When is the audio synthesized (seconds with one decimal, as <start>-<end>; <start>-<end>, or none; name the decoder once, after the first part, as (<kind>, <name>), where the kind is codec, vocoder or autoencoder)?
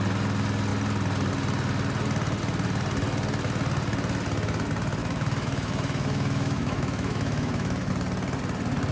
5.0-7.9 (autoencoder, DAC-VAE)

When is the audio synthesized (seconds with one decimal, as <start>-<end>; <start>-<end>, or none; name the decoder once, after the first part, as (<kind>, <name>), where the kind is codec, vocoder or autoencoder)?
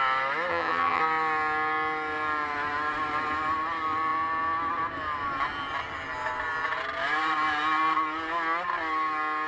0.5-1.0 (vocoder, HiFi-GAN)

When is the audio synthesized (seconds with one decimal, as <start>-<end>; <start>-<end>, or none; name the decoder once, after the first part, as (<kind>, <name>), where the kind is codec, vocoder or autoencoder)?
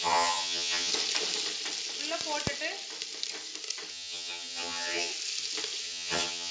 0.0-0.9 (vocoder, HiFi-GAN); 3.9-5.1; 5.8-6.5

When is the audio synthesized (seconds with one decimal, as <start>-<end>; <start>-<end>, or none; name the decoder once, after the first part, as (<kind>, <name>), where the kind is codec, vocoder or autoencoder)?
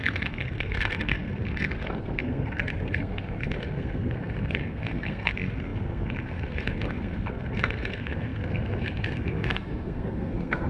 0.0-10.7 (codec, SNAC)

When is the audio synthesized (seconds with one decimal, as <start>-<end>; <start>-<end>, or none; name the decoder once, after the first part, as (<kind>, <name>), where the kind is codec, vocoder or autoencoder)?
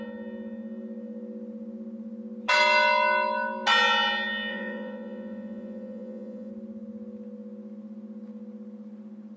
4.5-6.5 (vocoder, Vocos)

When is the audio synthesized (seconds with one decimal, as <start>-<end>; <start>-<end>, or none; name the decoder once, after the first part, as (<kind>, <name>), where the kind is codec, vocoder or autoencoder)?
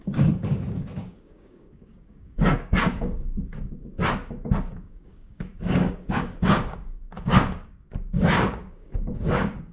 0.0-3.9 (codec, DAC); 4.7-9.7